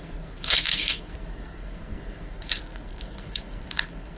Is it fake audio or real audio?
fake